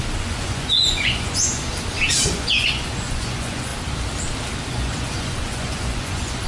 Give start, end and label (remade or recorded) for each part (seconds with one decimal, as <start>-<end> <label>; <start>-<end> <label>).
0.0-1.7 remade; 1.7-2.3 recorded; 2.3-3.7 remade; 3.7-4.7 recorded; 4.7-6.5 remade